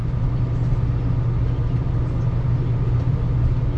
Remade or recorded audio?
recorded